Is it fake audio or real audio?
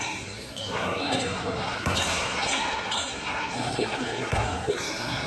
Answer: fake